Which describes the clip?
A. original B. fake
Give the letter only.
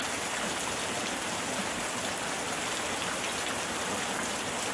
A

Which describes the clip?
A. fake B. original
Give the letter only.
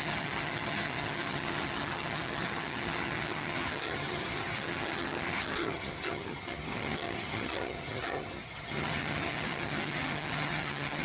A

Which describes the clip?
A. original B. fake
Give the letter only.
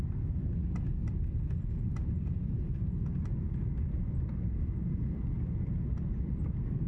A